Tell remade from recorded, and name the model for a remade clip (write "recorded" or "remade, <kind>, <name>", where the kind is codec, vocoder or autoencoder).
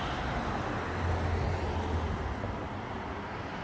recorded